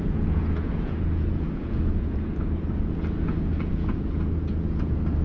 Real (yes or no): no